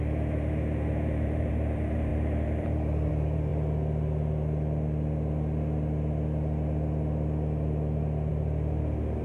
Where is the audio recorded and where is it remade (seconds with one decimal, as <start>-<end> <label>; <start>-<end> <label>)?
0.0-3.5 remade; 3.5-8.3 recorded; 8.3-9.2 remade